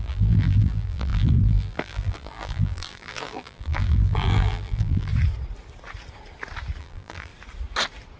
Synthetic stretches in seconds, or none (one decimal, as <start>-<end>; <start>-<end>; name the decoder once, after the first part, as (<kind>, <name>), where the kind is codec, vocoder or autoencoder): 0.0-5.1 (vocoder, BigVGAN v2); 6.8-7.3